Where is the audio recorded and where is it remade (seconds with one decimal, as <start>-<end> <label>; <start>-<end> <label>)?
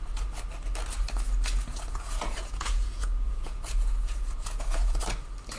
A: 0.0-1.7 recorded; 1.7-5.0 remade; 5.0-5.6 recorded